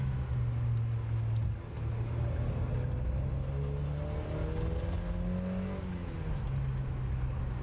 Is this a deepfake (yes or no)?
no